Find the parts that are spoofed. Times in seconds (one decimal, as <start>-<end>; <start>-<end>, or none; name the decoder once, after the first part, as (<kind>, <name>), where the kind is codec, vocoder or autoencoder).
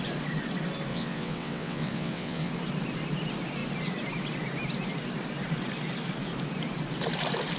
0.9-2.5 (vocoder, WaveNeXt)